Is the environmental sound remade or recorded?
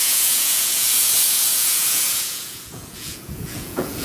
remade